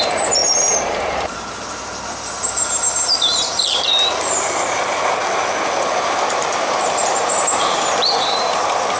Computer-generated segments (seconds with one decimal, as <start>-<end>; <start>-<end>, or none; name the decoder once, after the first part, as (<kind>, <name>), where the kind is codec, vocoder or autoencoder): 0.0-3.9 (vocoder, BigVGAN v2); 6.0-9.0